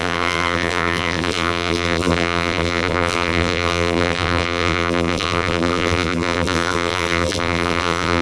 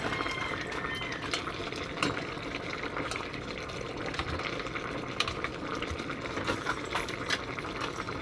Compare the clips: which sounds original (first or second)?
second